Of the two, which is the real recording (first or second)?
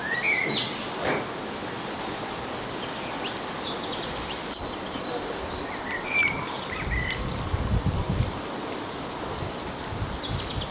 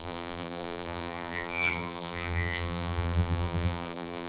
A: first